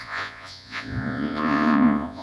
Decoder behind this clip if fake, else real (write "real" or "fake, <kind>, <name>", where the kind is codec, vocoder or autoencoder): fake, vocoder, Vocos